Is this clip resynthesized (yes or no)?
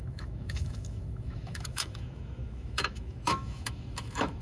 yes